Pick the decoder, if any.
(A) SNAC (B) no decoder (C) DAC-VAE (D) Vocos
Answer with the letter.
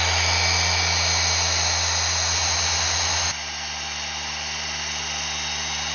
B